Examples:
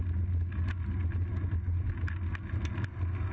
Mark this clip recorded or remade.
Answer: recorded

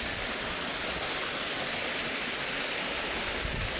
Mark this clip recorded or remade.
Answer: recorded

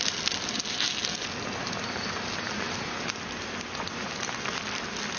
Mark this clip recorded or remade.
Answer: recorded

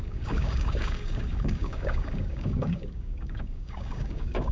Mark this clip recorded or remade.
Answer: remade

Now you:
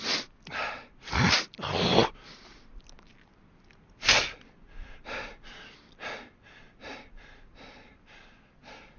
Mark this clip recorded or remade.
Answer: recorded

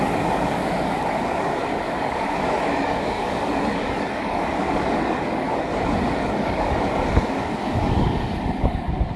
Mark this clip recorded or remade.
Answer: remade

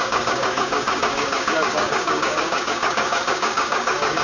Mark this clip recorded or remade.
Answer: remade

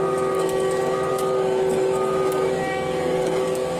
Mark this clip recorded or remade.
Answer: remade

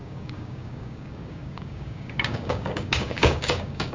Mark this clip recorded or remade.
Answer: remade